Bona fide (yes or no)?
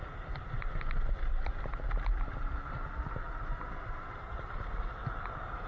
yes